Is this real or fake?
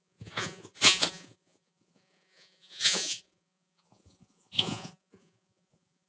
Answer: fake